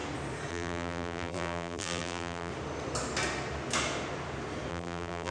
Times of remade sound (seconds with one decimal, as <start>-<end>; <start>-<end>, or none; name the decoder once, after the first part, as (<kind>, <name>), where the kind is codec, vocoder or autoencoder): 0.5-2.5 (vocoder, BigVGAN v2); 4.7-5.3